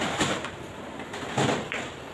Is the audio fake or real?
real